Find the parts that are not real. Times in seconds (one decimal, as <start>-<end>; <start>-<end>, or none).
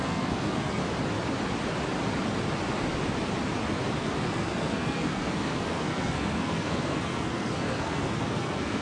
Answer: 0.0-0.8; 4.0-8.8